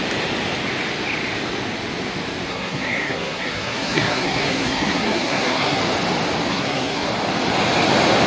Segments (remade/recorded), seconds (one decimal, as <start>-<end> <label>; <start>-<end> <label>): 0.0-2.5 recorded; 2.5-5.8 remade; 5.8-6.5 recorded; 6.5-7.1 remade; 7.1-8.3 recorded